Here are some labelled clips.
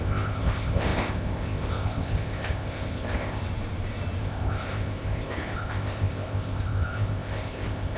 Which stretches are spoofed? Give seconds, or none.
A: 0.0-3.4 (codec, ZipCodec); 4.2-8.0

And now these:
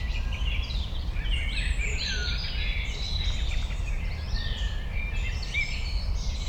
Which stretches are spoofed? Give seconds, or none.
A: none

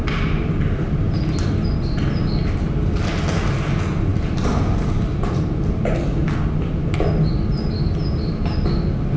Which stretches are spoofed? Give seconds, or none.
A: 4.1-5.7 (vocoder, BigVGAN v2); 6.2-6.7

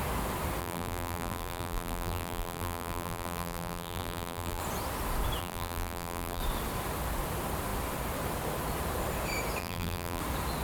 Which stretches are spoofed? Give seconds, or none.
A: 0.6-4.6 (vocoder, BigVGAN v2); 5.4-6.4; 9.6-10.2